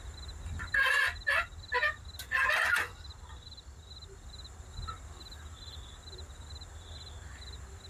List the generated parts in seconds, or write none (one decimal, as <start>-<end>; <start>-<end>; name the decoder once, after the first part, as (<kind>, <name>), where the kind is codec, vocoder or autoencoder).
none